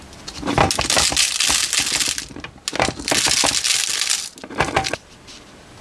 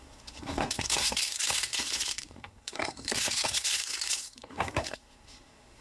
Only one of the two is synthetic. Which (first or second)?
second